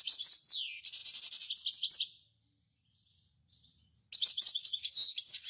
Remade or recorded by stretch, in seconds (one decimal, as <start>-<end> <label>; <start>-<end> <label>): 0.0-5.5 recorded